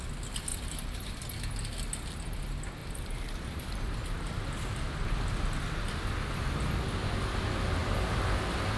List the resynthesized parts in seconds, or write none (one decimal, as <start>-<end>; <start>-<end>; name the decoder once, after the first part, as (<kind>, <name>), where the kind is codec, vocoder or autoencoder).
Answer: 0.5-1.2 (vocoder, BigVGAN v2); 2.8-6.7; 7.8-8.8